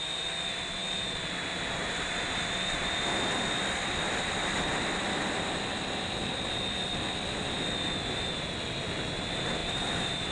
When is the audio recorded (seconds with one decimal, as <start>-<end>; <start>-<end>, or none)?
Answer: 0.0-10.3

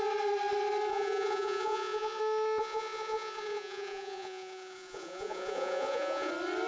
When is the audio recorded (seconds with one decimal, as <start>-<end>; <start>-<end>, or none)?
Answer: 0.0-0.9; 2.2-2.6; 6.3-6.7

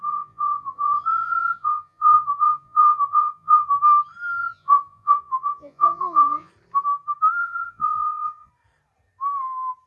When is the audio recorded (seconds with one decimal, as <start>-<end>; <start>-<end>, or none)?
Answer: 3.7-4.4; 6.5-7.4; 8.5-9.9

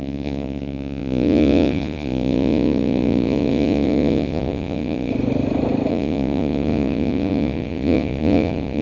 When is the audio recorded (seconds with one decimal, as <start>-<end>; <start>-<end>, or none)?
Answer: 5.1-5.9

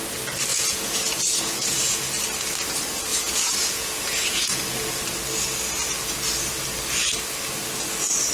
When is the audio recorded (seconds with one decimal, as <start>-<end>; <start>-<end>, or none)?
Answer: 0.0-0.5; 2.2-3.1; 5.0-8.3

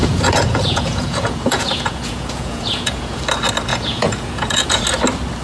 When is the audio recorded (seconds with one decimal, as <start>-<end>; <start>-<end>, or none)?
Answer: 3.2-3.7; 4.8-5.4